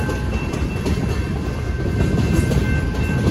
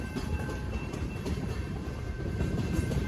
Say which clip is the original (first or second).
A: first